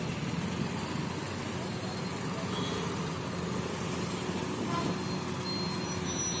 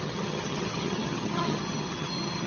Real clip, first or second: first